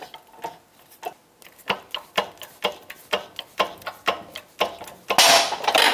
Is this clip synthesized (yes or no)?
no